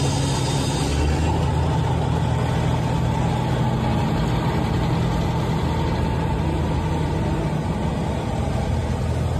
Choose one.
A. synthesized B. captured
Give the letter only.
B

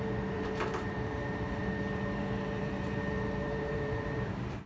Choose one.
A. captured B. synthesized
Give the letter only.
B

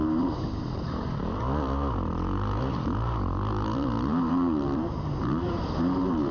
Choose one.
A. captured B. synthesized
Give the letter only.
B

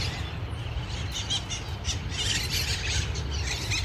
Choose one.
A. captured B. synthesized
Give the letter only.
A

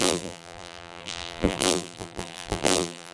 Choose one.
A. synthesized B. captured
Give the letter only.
A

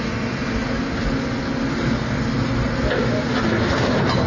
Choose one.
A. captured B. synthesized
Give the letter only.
A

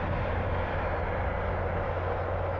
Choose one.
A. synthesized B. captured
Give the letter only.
B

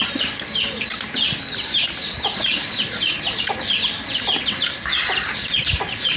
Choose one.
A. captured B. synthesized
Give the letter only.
A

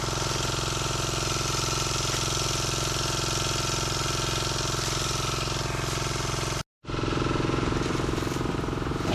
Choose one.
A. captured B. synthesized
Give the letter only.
A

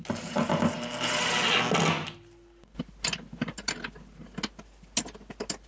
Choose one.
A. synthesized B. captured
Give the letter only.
B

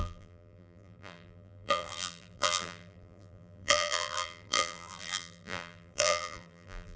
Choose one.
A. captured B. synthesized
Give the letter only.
B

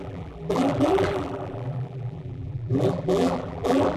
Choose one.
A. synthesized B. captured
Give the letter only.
A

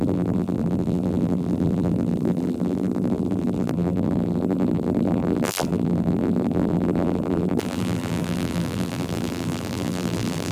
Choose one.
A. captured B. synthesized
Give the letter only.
B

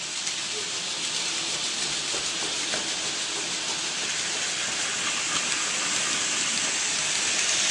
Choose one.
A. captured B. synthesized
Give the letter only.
A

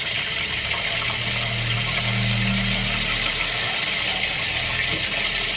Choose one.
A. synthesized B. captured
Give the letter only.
B